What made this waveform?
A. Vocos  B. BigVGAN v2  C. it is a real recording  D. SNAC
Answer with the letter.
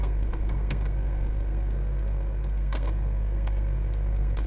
D